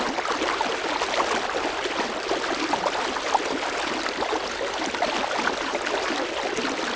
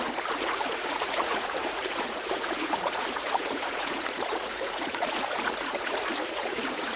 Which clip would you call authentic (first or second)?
first